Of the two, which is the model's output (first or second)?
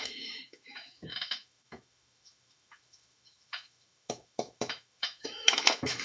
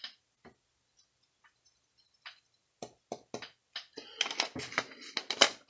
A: first